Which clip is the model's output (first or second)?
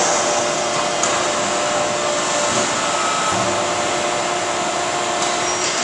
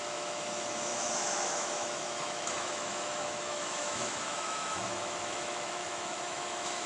second